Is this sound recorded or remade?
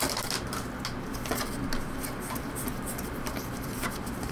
recorded